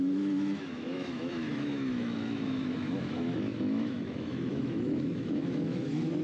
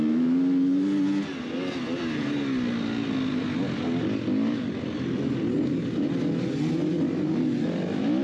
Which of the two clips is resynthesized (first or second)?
first